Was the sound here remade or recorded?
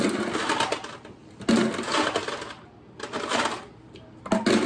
recorded